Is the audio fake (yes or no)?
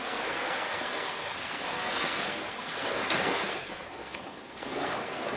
yes